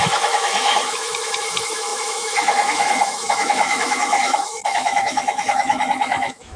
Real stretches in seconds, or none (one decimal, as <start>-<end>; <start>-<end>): none